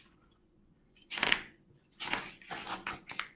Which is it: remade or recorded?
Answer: remade